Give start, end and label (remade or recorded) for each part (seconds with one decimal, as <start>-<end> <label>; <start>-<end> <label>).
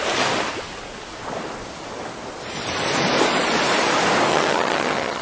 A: 0.0-4.3 recorded; 4.3-5.2 remade